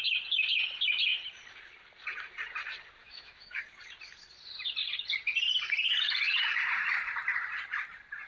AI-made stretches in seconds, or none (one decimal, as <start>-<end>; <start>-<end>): 3.0-3.6